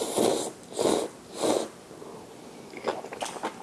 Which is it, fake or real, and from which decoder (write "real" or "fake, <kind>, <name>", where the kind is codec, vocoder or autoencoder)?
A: real